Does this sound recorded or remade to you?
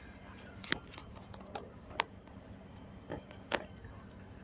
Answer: recorded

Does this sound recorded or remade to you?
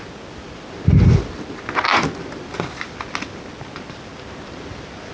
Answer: recorded